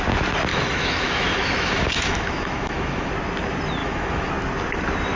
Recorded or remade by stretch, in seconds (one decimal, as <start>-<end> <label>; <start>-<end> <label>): 0.0-0.5 recorded; 0.5-3.1 remade; 3.1-3.8 recorded; 3.8-4.3 remade; 4.3-5.2 recorded